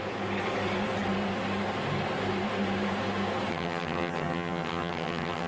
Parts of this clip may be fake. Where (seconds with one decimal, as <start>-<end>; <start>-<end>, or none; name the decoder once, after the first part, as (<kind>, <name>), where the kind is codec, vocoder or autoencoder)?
3.5-5.5 (vocoder, HiFi-GAN)